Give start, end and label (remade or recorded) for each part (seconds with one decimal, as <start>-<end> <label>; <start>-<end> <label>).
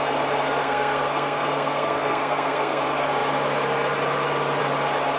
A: 0.0-0.6 recorded; 0.6-2.8 remade; 2.8-5.2 recorded